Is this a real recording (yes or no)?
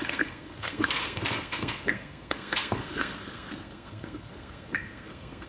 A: no